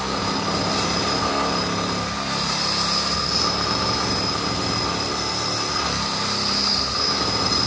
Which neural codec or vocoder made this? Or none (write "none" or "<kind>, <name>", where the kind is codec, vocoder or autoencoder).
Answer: none